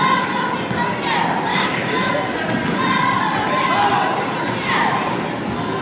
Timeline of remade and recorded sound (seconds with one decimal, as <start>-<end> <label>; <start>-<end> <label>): 0.0-1.5 recorded; 1.5-2.1 remade; 2.1-5.8 recorded